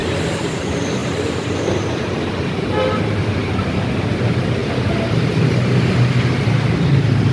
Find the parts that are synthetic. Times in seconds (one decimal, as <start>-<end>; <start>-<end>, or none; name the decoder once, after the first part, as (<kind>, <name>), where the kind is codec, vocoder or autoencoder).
1.0-2.3 (vocoder, BigVGAN v2)